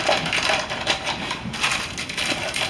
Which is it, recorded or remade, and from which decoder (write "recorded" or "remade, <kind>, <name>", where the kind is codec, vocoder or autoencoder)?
recorded